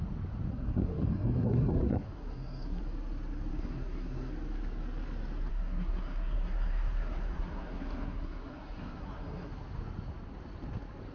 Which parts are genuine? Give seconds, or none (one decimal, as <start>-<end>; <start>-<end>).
0.0-0.5; 2.8-3.5; 4.3-5.5; 9.5-11.1